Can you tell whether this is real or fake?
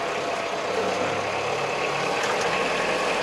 real